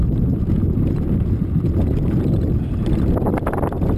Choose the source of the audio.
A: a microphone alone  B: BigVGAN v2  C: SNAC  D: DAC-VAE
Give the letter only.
A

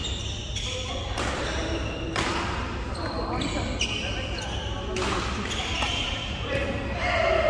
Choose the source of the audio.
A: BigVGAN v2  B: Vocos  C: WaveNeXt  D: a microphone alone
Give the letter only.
D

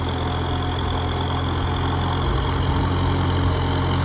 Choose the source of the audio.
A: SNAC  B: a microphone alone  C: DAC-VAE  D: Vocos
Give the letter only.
B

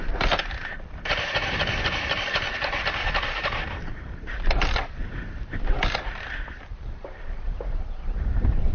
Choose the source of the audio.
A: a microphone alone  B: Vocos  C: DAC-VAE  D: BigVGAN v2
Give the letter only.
D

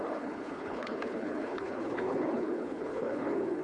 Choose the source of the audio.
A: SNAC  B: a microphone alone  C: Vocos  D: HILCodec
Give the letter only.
D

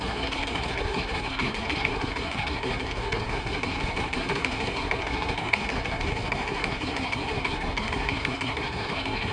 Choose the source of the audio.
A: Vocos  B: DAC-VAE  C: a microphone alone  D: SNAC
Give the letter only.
D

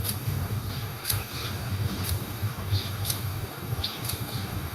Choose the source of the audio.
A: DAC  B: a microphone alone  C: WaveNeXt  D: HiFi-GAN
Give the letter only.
A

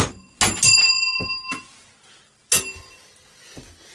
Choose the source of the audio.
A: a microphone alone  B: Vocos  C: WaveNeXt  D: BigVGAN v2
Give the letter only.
A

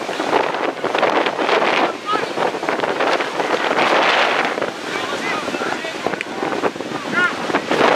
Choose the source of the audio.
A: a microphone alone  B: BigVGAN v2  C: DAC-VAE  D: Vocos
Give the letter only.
A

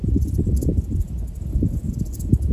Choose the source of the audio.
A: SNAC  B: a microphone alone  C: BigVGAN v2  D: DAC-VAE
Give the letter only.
B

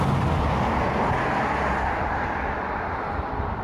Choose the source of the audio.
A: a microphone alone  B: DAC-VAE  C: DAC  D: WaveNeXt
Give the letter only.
A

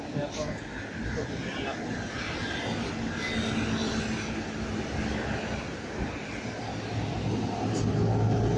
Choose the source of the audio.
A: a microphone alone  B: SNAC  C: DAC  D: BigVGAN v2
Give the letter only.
A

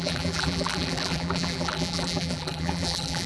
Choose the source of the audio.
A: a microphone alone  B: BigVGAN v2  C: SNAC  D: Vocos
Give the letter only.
B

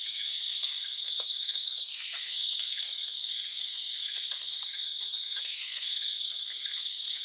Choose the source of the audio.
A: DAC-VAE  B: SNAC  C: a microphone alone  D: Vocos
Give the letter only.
B